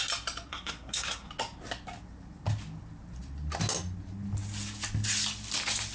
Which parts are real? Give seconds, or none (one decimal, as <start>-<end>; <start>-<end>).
0.0-0.5; 1.3-5.9